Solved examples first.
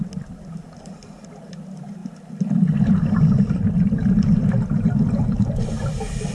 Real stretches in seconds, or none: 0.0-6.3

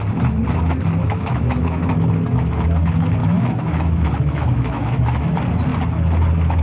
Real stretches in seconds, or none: 0.0-1.0; 1.8-3.2; 5.3-6.6

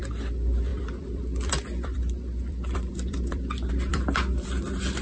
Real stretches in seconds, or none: none

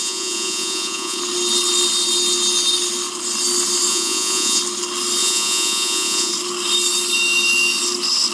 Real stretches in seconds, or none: 1.2-3.9; 4.6-5.2; 6.3-8.3

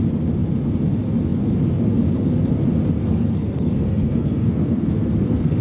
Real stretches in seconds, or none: 0.0-3.0

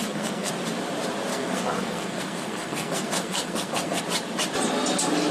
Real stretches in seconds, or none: 0.5-1.3; 4.0-5.3

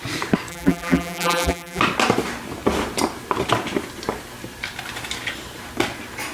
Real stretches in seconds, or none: 0.0-0.5; 1.8-6.3